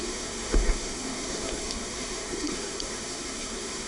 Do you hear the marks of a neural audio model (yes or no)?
yes